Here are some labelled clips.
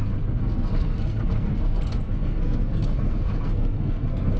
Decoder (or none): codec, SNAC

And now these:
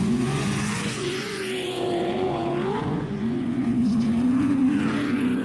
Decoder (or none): vocoder, Vocos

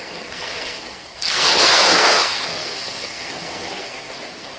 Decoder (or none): codec, SNAC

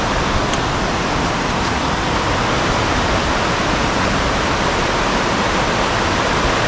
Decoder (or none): none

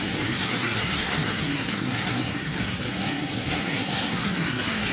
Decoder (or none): codec, SNAC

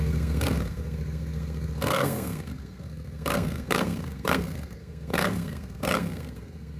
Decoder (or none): codec, SNAC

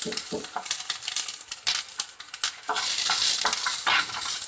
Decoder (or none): none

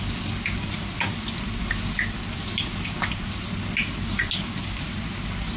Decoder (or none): none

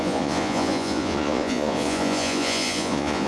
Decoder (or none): vocoder, Vocos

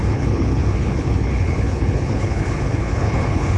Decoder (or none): codec, HILCodec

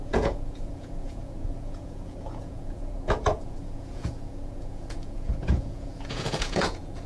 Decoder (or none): vocoder, Vocos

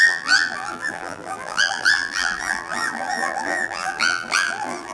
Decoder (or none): vocoder, BigVGAN v2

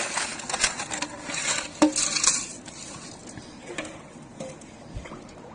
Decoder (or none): none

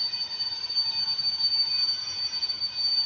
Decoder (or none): vocoder, BigVGAN v2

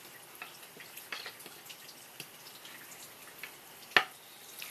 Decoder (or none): none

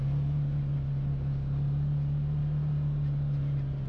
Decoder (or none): none